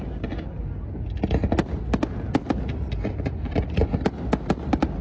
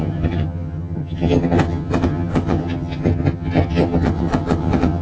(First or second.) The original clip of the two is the first